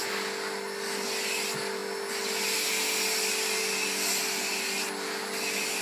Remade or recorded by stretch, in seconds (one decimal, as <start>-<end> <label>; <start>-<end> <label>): 0.0-5.8 recorded